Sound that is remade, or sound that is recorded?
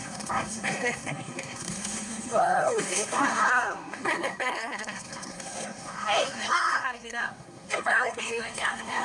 remade